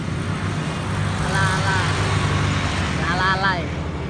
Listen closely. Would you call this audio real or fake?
real